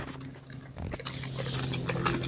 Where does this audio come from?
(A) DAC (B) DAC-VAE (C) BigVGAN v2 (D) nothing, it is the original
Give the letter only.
D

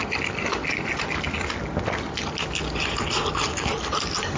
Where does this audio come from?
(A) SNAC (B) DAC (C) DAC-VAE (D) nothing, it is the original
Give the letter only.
D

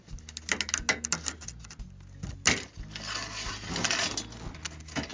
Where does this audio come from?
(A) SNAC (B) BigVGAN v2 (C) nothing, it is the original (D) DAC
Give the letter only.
C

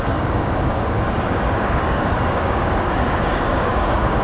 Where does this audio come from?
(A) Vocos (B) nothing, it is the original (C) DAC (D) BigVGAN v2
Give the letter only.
C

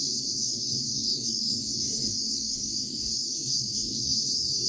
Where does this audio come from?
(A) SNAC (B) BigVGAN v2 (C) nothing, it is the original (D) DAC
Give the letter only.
D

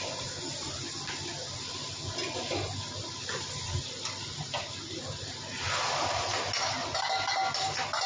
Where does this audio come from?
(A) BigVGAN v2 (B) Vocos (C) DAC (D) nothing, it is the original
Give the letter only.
D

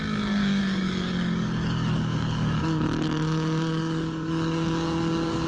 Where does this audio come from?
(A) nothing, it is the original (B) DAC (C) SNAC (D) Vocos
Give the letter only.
B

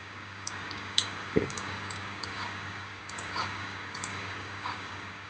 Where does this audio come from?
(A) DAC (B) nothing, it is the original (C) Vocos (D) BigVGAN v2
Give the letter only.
A